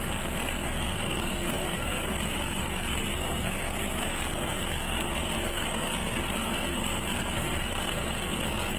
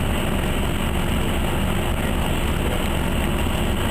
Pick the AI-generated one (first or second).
first